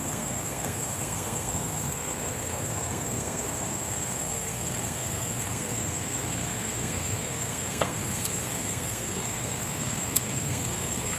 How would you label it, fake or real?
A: fake